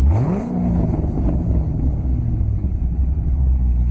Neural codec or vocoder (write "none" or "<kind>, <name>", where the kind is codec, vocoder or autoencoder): codec, HILCodec